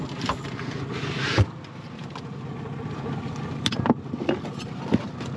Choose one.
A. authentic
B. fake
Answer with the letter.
A